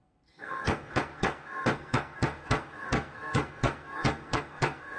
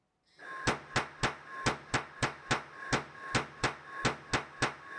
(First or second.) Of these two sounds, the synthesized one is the first